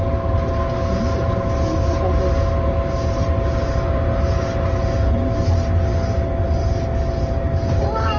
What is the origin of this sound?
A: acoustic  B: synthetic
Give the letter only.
A